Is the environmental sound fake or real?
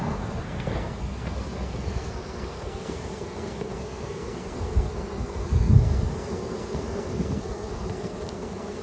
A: fake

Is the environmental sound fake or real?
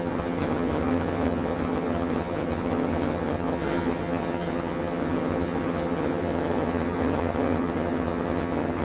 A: fake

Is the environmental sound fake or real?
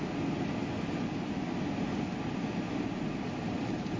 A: real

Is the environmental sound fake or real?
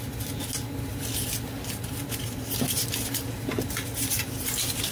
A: real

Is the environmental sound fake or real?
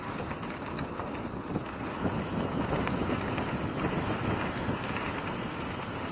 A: fake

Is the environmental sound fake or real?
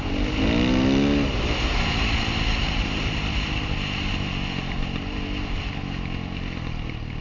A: real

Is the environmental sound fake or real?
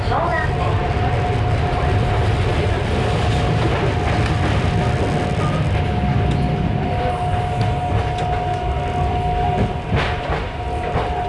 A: real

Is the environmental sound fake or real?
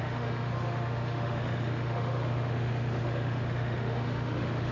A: fake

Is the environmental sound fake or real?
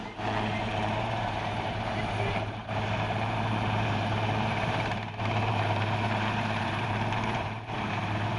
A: fake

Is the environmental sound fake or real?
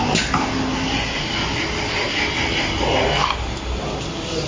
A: real